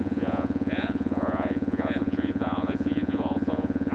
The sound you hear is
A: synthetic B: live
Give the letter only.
A